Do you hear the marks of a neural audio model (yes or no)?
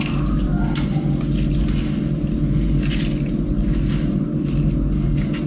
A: no